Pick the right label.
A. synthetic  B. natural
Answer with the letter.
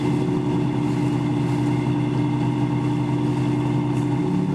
B